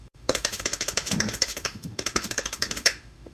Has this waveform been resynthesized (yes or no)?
yes